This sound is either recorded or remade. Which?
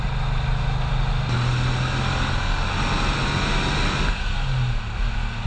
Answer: recorded